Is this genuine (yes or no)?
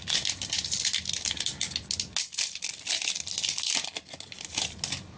yes